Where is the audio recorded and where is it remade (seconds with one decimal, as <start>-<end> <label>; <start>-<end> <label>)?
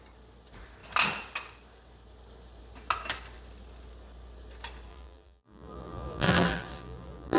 0.0-4.9 recorded; 4.9-7.4 remade